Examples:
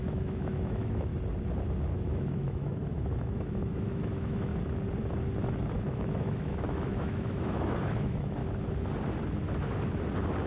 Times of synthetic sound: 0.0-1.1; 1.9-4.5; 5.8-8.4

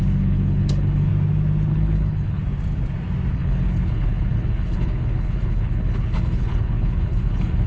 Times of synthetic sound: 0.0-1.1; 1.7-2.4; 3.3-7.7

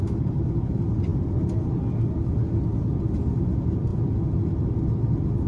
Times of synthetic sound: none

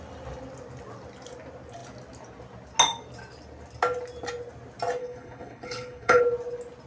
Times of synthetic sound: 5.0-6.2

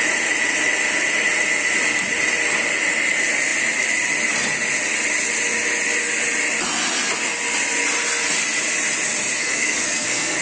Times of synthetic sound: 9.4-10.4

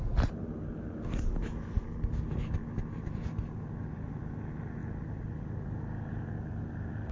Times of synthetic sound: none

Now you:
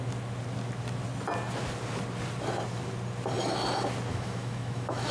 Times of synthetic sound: 4.1-5.1

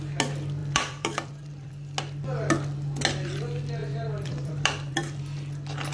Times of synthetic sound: 0.6-1.7; 3.8-5.2